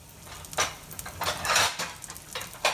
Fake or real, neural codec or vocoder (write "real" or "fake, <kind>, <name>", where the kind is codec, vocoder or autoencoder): real